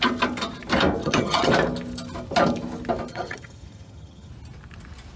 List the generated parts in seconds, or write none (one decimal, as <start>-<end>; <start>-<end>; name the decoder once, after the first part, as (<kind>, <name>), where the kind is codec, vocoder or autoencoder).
1.0-1.5 (vocoder, HiFi-GAN); 3.1-4.3